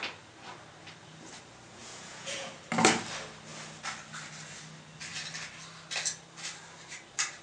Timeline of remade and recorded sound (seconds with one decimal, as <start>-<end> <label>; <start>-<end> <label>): 0.0-1.8 recorded; 1.8-2.5 remade; 2.5-7.4 recorded